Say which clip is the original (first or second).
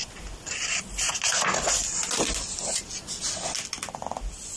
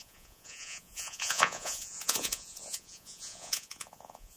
first